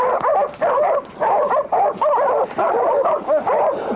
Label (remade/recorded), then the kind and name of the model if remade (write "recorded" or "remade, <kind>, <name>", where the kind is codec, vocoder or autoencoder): remade, vocoder, BigVGAN v2